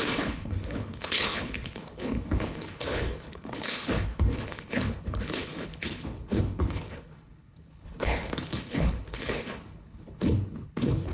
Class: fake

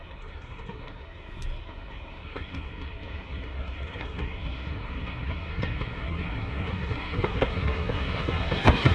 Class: fake